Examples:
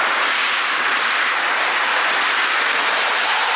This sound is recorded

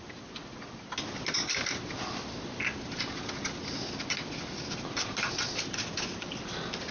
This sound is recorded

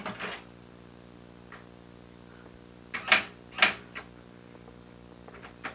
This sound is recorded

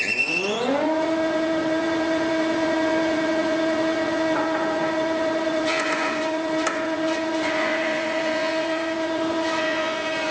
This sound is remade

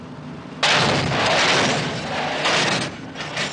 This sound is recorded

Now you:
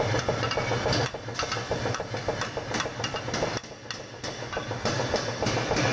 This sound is recorded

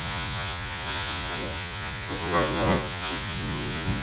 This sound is remade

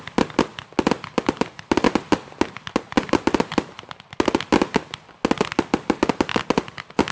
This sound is recorded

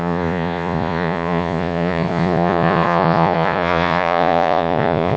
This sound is remade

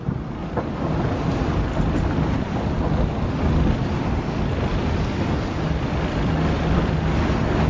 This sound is recorded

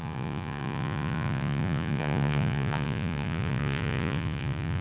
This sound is remade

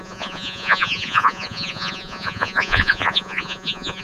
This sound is remade